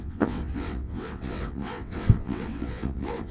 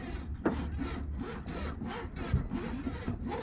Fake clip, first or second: first